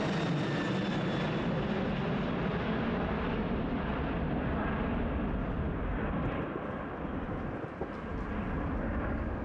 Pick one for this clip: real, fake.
real